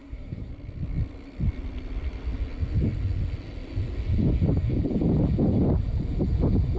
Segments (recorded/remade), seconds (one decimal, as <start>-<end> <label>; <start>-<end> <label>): 0.0-0.5 remade; 0.5-6.8 recorded